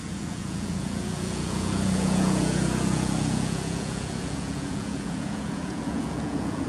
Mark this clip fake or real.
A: fake